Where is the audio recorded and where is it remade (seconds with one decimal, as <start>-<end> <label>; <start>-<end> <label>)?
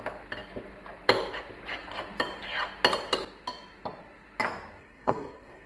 0.0-4.8 recorded; 4.8-5.7 remade